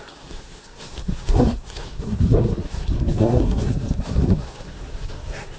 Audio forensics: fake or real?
fake